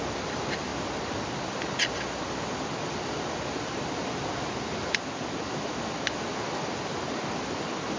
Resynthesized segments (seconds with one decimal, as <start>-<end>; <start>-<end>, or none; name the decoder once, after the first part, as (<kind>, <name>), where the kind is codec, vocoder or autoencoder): none